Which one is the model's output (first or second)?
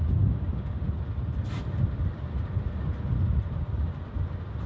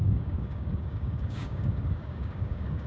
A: second